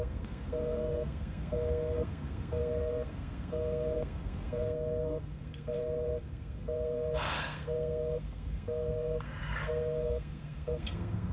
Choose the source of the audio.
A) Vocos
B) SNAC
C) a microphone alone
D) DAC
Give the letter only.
B